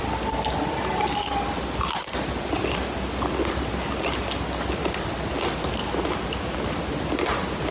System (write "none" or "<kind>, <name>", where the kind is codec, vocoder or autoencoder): none